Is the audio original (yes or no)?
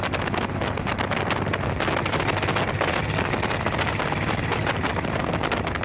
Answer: yes